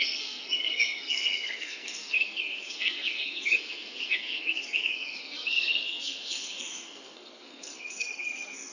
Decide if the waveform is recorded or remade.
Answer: remade